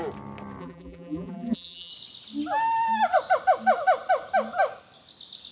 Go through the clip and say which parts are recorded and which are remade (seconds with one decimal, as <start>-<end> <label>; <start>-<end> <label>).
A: 0.0-0.6 recorded; 0.6-1.9 remade; 1.9-5.5 recorded